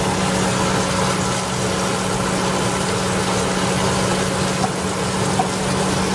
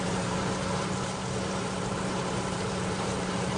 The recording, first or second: first